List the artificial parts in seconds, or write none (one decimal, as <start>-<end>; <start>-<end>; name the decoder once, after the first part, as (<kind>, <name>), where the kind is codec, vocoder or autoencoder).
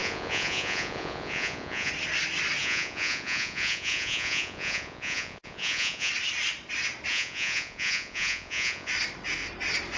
0.0-1.9 (vocoder, Vocos); 2.6-6.1; 7.1-8.9